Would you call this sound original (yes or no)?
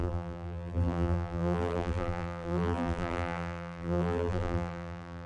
no